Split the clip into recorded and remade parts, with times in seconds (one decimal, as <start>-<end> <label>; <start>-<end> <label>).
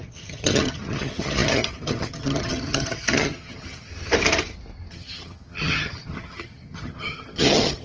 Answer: 0.0-3.9 remade; 3.9-4.9 recorded; 4.9-7.8 remade